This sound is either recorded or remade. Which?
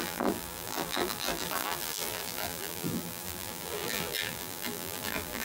remade